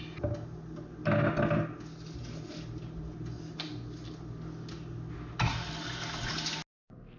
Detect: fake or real real